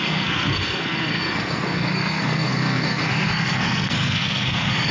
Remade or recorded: remade